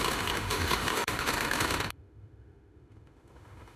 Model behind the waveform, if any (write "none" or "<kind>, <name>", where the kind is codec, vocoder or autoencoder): autoencoder, DAC-VAE